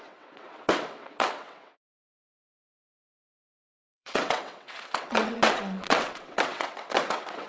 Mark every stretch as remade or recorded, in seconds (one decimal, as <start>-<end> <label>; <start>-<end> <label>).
0.0-7.5 remade